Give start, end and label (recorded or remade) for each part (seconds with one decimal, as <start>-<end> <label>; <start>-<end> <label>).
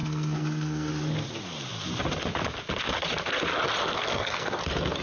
0.0-0.9 remade; 0.9-3.8 recorded; 3.8-4.6 remade; 4.6-5.0 recorded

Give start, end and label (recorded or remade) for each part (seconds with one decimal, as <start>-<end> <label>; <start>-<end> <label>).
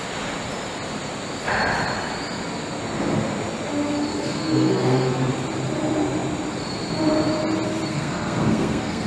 0.0-4.1 recorded; 4.1-5.3 remade; 5.3-7.9 recorded; 7.9-9.1 remade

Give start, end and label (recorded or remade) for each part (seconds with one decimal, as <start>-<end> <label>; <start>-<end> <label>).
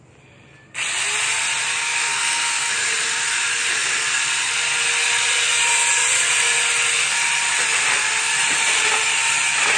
0.0-1.8 recorded; 1.8-2.7 remade; 2.7-9.8 recorded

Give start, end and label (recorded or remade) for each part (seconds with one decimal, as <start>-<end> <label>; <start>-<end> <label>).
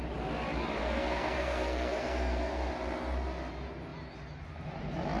0.0-0.8 recorded; 0.8-2.7 remade; 2.7-5.2 recorded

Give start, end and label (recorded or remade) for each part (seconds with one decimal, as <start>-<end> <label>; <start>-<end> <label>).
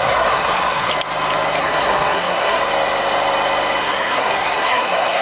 0.0-0.9 remade; 0.9-1.6 recorded; 1.6-2.6 remade; 2.6-3.8 recorded; 3.8-5.2 remade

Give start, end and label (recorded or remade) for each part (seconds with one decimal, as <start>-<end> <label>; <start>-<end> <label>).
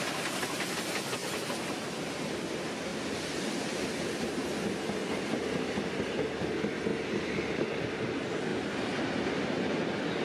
0.0-10.2 recorded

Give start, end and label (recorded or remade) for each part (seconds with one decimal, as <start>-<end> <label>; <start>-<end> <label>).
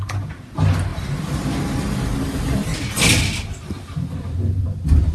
0.0-5.1 recorded